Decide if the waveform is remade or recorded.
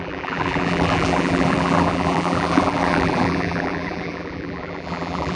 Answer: remade